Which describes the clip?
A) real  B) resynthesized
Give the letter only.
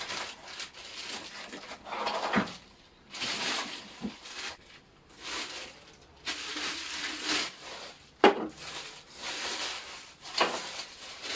B